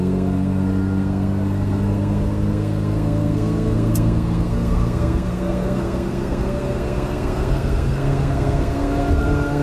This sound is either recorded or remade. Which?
remade